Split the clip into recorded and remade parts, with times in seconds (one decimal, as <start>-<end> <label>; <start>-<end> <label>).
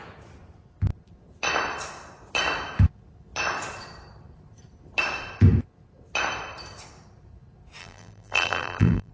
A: 0.0-7.8 recorded; 7.8-9.1 remade